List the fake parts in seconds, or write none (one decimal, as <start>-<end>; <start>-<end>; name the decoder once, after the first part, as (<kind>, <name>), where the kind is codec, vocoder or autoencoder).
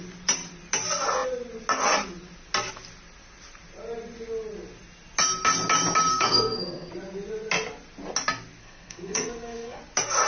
6.1-6.9 (codec, SNAC); 8.6-9.8